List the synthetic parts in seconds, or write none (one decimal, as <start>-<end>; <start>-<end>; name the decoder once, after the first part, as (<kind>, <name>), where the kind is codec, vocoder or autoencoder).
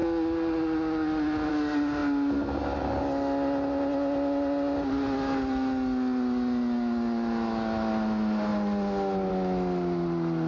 none